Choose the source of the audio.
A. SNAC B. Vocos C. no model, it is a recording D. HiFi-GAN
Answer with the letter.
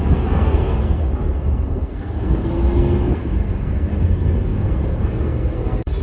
A